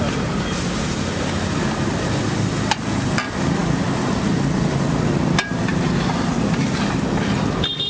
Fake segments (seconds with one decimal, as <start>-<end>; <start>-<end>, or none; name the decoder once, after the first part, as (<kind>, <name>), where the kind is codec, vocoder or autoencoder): none